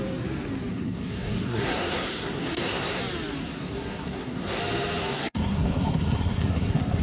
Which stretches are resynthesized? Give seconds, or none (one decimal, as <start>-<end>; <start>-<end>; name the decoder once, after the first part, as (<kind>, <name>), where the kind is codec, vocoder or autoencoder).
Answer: 0.7-3.0 (codec, SNAC); 3.4-4.6; 5.0-7.0